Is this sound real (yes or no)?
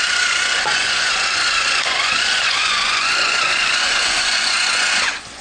no